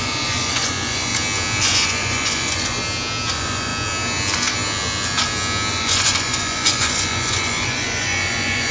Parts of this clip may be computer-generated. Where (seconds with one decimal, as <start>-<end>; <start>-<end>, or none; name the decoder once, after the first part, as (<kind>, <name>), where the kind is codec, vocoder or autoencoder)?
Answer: 0.0-1.1 (vocoder, Vocos); 1.6-2.8; 3.3-3.7; 5.7-8.7